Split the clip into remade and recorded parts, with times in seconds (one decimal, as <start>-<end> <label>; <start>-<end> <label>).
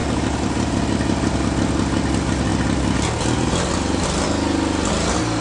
0.0-0.8 remade; 0.8-5.4 recorded